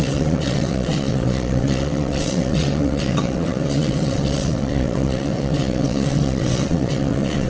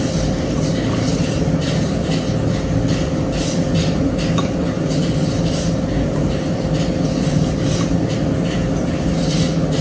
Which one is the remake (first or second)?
first